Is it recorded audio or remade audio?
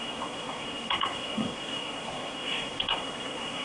remade